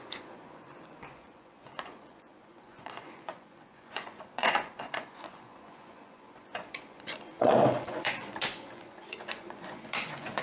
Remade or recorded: remade